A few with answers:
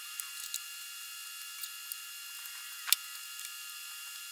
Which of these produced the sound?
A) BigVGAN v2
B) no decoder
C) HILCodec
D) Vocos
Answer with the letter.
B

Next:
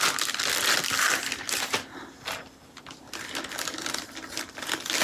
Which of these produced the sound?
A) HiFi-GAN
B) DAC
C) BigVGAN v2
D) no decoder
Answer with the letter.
D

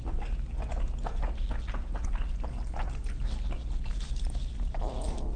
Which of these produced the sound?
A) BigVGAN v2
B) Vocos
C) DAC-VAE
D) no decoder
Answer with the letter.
D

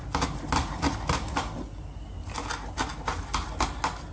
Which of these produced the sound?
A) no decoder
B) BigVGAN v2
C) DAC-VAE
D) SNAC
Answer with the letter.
A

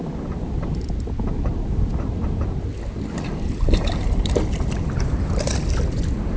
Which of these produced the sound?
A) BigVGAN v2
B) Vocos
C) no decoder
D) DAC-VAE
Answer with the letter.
C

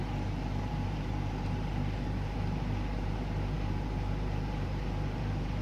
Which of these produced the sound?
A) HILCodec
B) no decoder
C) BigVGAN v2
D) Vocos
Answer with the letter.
C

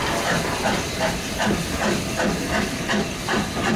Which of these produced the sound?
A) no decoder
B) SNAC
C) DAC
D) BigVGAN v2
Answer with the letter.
A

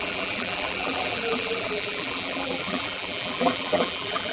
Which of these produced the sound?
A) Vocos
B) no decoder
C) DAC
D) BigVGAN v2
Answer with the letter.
D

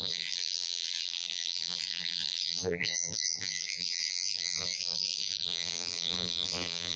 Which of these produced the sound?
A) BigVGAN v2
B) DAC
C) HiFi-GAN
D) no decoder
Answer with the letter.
A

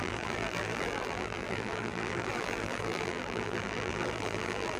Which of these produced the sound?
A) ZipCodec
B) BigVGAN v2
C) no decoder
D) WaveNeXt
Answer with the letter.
B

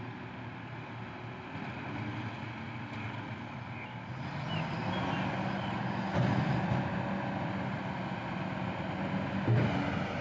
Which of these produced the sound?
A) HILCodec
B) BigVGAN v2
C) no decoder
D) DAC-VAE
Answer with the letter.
C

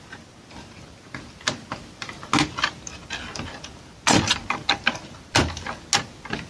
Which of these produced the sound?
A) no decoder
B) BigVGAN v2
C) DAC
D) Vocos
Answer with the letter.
A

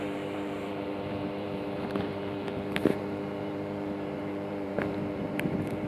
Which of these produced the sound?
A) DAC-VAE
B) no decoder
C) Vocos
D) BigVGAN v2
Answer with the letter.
D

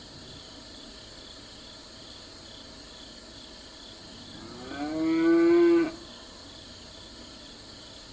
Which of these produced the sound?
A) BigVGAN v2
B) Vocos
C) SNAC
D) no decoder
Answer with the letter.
D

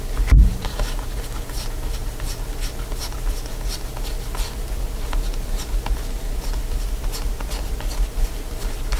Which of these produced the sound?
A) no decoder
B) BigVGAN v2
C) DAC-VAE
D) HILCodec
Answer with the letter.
A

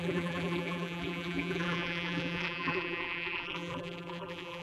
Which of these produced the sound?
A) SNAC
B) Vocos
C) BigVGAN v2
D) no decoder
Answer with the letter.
C